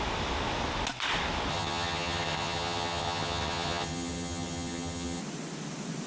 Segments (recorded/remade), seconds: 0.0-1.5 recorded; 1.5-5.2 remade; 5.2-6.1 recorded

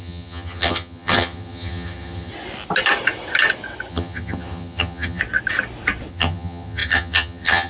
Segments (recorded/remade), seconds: 0.0-2.3 remade; 2.3-3.9 recorded; 3.9-5.2 remade; 5.2-6.1 recorded; 6.1-7.7 remade

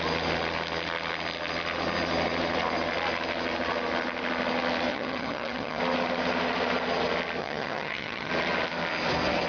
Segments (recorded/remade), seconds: 0.0-4.9 recorded; 4.9-5.8 remade; 5.8-7.4 recorded; 7.4-8.3 remade; 8.3-9.5 recorded